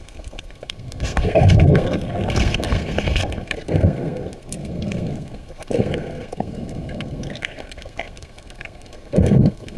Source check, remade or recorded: remade